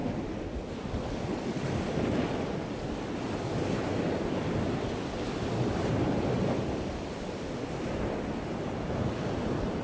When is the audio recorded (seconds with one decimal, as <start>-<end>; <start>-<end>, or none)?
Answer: 0.0-9.8